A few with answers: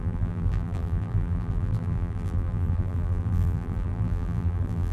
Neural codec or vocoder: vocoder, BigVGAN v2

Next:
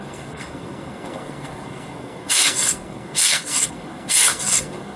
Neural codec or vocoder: codec, SNAC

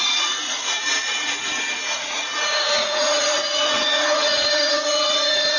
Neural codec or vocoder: vocoder, Vocos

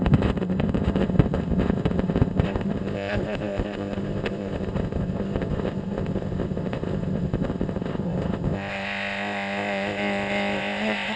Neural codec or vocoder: codec, ZipCodec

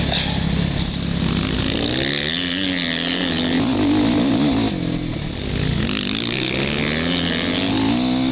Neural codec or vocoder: none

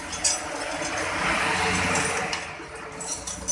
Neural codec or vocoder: none